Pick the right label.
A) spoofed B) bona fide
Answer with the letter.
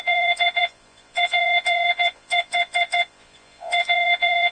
A